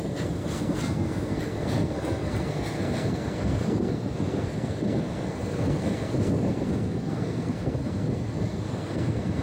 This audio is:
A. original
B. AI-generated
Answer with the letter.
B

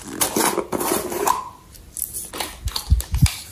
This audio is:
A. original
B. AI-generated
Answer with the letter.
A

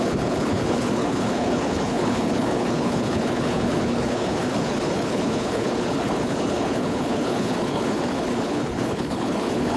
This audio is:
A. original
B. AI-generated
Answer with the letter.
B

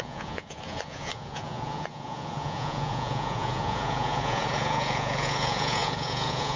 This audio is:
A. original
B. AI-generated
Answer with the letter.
B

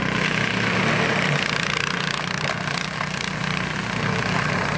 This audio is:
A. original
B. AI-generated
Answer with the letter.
A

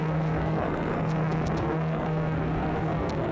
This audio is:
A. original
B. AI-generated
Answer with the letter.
B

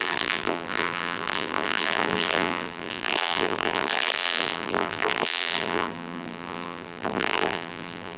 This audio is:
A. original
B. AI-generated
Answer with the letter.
B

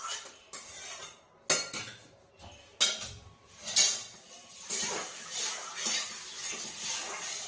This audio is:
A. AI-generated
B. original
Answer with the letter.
B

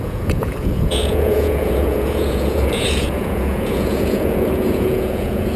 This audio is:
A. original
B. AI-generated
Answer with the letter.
B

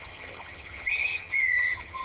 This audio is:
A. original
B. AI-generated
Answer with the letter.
B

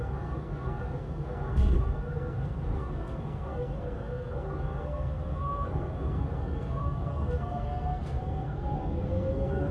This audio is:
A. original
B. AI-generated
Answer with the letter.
B